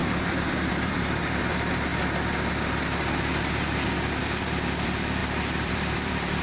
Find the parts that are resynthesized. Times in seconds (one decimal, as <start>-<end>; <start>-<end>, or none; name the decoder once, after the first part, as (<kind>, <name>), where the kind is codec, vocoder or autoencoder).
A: 0.0-1.9 (vocoder, BigVGAN v2); 4.2-6.4